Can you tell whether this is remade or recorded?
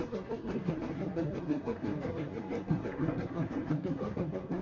remade